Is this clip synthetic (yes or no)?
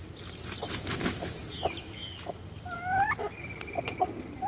no